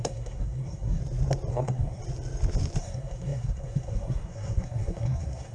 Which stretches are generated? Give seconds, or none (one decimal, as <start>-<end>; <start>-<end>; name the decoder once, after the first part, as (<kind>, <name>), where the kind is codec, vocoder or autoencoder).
0.0-1.0 (codec, SNAC); 1.5-2.0; 2.8-5.5

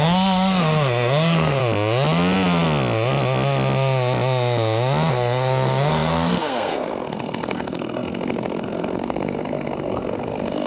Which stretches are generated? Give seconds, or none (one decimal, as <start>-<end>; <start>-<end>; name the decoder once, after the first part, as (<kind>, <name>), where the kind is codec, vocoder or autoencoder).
0.0-1.6 (codec, SNAC); 5.1-10.7

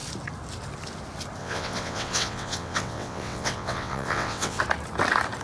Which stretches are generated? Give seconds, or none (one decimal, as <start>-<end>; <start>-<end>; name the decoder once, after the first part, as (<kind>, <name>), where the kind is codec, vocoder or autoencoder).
1.4-4.6 (vocoder, WaveNeXt)